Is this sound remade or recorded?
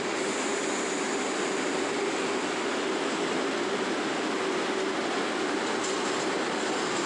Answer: recorded